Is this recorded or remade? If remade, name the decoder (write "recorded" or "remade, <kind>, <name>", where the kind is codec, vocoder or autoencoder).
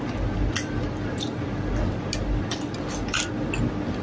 recorded